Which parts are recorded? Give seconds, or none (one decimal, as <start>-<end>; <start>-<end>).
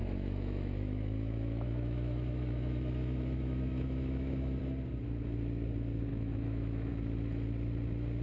4.6-6.1; 6.9-8.2